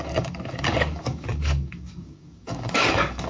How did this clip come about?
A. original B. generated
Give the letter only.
B